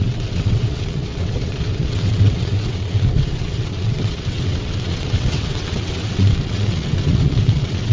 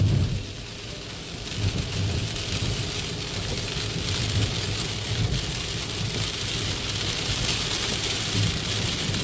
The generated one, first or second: first